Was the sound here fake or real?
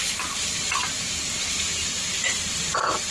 fake